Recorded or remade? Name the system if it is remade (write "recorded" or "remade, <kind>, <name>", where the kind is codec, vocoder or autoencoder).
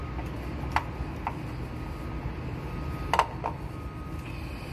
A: recorded